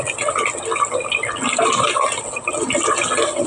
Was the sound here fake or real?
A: real